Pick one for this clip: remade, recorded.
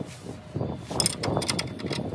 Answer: recorded